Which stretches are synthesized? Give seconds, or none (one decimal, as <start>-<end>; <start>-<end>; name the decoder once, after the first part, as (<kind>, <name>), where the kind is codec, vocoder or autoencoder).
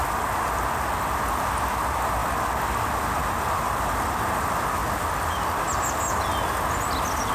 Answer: none